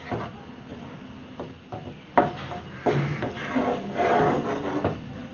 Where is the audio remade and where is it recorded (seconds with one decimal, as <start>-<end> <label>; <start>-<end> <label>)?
0.0-5.3 recorded